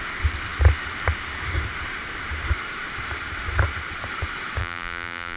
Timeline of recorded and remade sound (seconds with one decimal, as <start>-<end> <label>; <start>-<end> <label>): 0.0-4.6 recorded; 4.6-5.4 remade